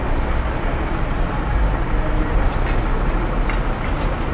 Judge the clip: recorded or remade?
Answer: recorded